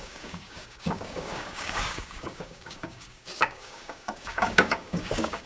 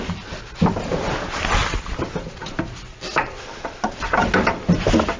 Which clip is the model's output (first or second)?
first